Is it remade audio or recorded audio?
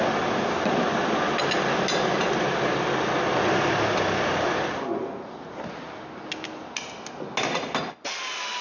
recorded